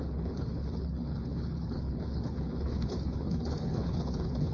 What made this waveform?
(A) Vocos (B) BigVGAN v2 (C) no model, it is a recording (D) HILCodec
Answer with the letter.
D